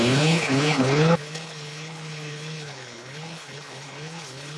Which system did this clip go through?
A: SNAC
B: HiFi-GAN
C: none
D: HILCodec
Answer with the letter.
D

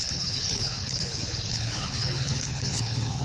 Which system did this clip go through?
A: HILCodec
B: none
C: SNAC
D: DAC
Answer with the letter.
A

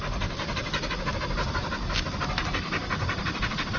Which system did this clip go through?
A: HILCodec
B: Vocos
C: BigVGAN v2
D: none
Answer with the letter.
D